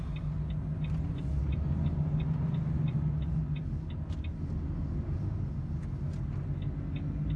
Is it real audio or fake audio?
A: real